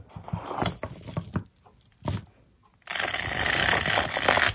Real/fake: real